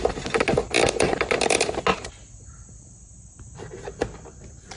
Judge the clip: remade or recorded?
recorded